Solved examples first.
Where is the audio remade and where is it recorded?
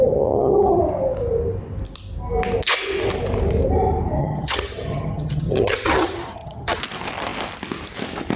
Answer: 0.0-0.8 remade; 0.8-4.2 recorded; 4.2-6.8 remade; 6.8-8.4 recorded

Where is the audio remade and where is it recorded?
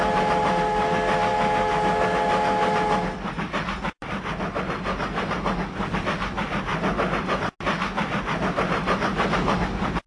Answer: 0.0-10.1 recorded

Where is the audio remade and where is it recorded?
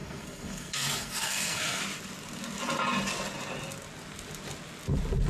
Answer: 0.0-1.8 remade; 1.8-5.3 recorded